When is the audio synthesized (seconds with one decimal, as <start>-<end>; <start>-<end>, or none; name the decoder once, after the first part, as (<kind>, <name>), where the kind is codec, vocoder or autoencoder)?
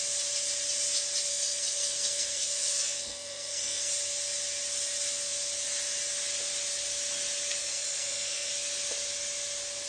1.3-3.9 (codec, SNAC); 7.6-8.5